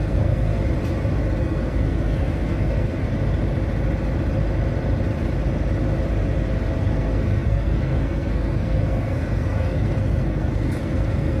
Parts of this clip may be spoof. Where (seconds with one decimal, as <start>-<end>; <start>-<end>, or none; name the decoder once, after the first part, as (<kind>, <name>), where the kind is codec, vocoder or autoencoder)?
0.0-0.6 (codec, SNAC); 1.4-3.1; 6.8-11.4